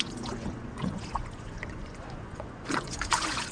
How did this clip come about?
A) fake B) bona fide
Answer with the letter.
A